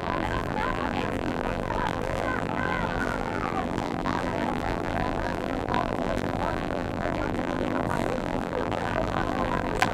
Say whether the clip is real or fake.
fake